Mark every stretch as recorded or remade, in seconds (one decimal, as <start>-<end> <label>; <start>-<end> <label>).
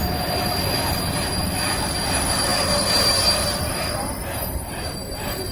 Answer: 0.0-5.5 recorded